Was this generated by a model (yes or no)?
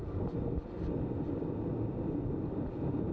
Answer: no